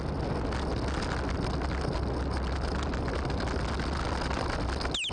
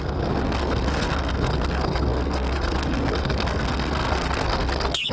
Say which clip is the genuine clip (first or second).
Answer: first